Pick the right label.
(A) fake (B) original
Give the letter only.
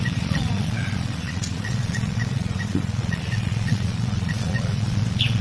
A